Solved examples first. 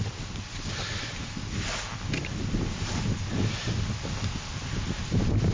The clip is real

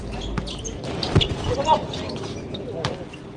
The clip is real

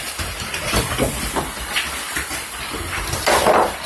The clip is real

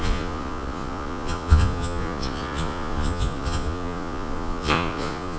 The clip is fake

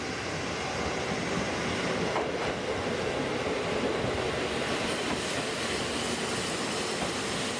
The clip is real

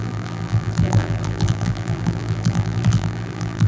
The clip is fake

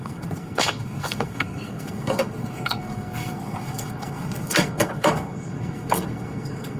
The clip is fake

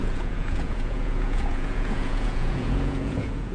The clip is fake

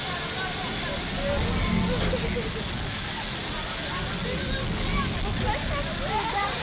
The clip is real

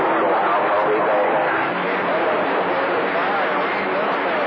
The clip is real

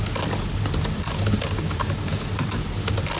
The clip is real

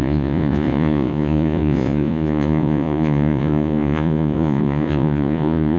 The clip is fake